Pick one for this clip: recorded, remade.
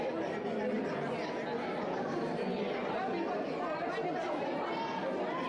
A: recorded